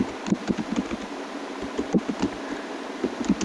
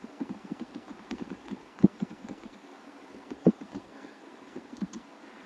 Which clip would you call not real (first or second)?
second